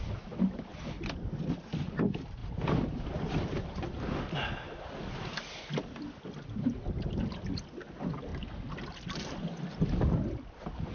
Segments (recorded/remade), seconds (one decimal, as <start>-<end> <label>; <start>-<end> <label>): 0.0-2.4 recorded; 2.4-6.2 remade; 6.2-8.3 recorded; 8.3-9.0 remade; 9.0-10.9 recorded